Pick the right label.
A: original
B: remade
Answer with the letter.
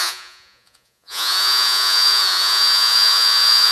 B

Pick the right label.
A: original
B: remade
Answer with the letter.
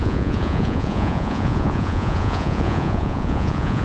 B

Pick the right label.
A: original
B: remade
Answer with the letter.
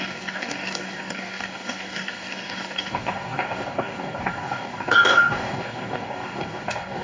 B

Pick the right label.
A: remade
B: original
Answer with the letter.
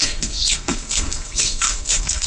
A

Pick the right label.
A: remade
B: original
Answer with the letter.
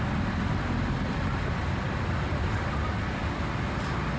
B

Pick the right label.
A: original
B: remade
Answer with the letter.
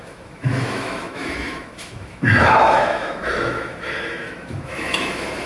B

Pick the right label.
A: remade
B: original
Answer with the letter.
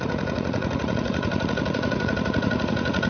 A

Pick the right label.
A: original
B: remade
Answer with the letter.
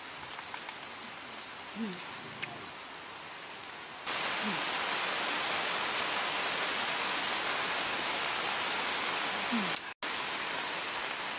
A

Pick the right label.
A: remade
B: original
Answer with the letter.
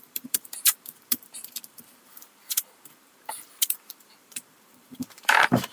A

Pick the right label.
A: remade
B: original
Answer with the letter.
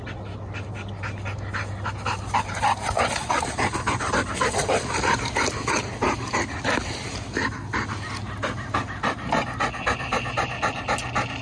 B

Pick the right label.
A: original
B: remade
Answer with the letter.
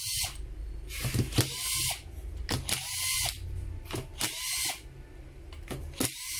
A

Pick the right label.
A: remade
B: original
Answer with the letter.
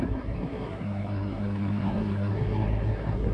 A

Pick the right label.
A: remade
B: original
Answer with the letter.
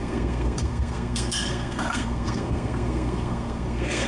A